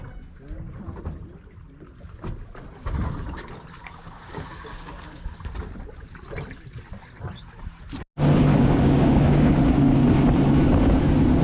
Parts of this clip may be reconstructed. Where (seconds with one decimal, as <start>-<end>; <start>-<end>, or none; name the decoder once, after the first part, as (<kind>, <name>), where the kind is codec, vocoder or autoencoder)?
3.8-5.3 (codec, DAC); 8.5-9.6